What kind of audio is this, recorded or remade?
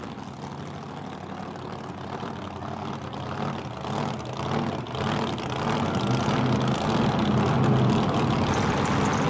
recorded